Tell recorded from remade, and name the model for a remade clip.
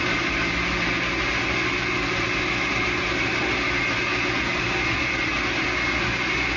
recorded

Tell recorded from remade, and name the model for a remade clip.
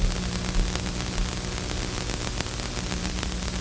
recorded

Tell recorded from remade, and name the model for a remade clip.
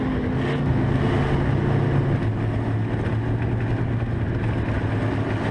recorded